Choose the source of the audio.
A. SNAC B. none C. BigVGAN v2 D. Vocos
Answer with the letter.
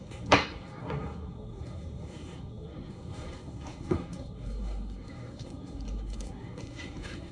A